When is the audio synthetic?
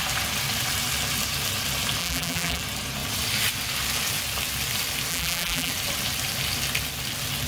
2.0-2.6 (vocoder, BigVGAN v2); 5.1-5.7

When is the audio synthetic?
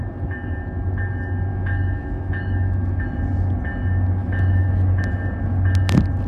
1.5-3.0 (autoencoder, DAC-VAE); 4.2-4.7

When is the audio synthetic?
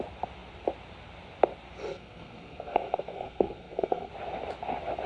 1.9-4.1 (codec, SNAC)